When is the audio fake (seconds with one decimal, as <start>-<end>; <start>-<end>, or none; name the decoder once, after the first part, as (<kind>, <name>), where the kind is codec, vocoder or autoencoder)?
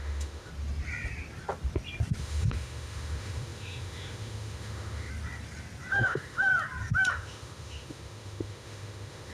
0.0-0.5 (autoencoder, DAC-VAE); 2.2-5.1; 5.9-6.5; 7.1-9.3